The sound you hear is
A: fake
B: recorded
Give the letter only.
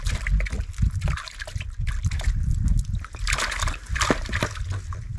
B